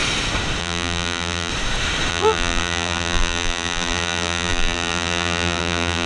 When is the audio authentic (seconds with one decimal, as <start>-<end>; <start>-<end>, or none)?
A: 0.0-0.6; 1.5-2.1